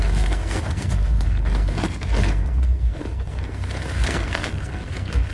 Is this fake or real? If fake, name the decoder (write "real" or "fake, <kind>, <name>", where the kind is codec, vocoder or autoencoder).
fake, codec, SNAC